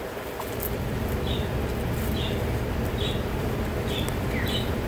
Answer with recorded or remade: recorded